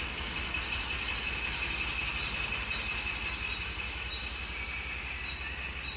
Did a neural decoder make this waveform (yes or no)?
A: no